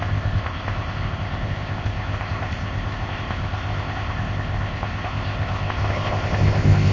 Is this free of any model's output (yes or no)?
no